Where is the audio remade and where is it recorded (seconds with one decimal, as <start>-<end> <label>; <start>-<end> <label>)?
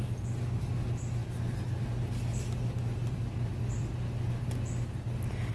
0.0-5.5 recorded